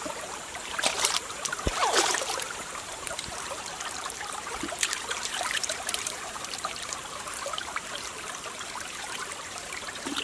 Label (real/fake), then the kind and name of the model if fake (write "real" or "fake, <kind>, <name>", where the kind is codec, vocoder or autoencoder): fake, vocoder, BigVGAN v2